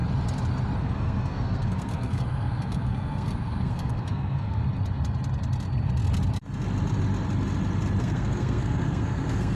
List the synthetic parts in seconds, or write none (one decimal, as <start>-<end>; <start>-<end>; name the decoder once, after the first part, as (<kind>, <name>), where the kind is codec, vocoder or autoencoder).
0.8-4.6 (codec, SNAC); 8.0-9.6